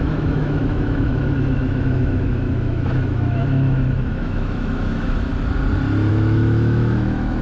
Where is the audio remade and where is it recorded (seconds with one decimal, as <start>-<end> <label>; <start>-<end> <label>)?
0.0-5.3 remade; 5.3-6.1 recorded; 6.1-7.4 remade